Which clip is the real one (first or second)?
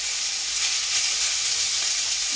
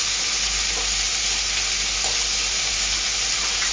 second